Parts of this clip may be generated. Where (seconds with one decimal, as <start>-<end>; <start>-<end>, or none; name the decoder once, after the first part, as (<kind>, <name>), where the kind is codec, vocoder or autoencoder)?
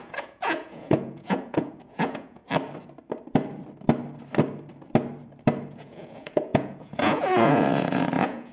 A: 0.0-2.4 (vocoder, Vocos); 5.7-8.5